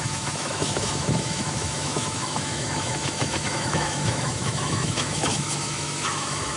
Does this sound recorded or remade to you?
remade